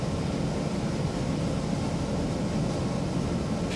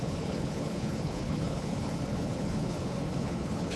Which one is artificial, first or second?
second